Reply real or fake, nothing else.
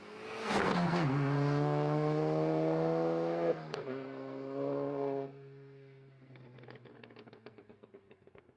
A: fake